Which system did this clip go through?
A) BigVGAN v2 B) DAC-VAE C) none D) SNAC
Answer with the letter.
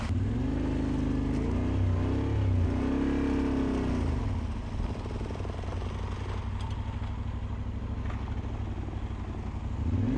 C